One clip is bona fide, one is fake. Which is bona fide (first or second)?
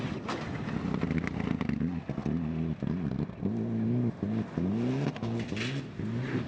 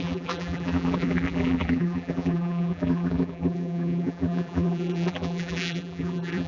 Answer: first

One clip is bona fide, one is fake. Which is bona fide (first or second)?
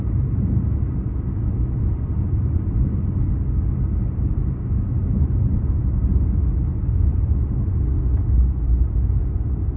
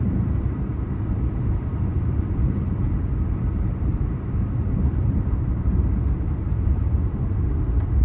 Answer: first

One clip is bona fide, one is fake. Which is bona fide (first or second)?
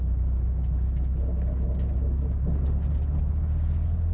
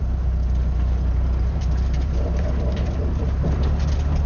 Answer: first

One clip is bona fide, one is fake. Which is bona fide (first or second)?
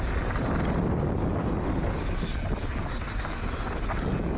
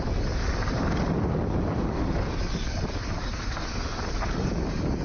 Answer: first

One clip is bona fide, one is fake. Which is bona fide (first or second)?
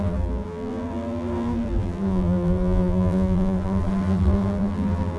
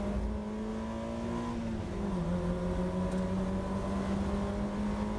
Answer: second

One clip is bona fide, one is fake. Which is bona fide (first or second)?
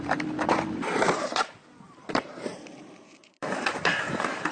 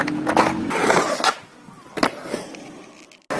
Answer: second